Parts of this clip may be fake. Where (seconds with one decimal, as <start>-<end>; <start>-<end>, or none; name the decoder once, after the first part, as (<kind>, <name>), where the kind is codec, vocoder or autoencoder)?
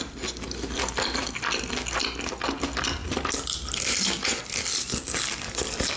none